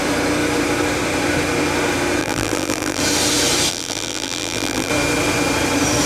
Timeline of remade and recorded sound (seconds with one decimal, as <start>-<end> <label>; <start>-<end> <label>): 0.0-2.2 recorded; 2.2-3.0 remade; 3.0-3.7 recorded; 3.7-4.9 remade; 4.9-6.1 recorded